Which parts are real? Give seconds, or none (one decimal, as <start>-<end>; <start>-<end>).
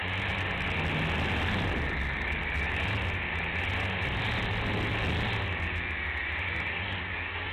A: 0.0-7.5